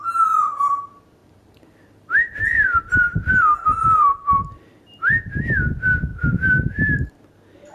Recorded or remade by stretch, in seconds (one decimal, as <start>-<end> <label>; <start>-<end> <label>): 0.0-1.2 recorded; 1.2-5.4 remade; 5.4-6.1 recorded; 6.1-7.1 remade; 7.1-7.7 recorded